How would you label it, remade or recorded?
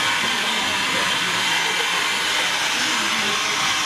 recorded